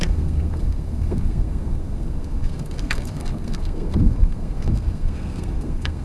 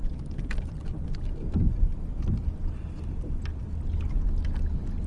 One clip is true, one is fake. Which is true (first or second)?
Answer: second